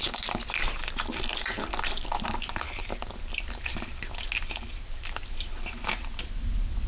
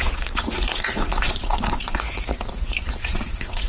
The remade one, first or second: second